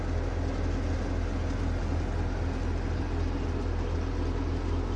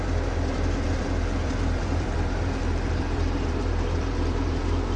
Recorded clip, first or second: first